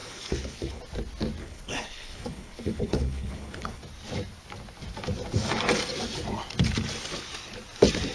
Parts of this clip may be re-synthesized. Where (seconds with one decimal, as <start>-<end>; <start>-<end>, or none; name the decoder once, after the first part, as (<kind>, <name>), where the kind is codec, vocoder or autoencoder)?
0.0-0.8 (codec, HILCodec); 1.4-3.8